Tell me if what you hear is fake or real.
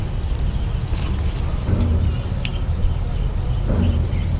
real